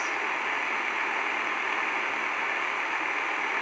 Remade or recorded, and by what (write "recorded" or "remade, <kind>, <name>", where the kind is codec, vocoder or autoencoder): recorded